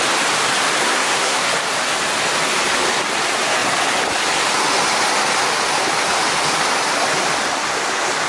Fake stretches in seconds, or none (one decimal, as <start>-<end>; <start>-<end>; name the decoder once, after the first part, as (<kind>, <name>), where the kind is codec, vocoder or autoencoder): 0.8-1.5 (codec, SNAC)